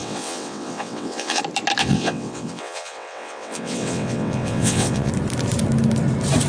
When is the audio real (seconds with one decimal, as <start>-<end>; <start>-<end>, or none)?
1.4-1.8; 5.1-6.5